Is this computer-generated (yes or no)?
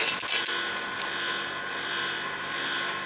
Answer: no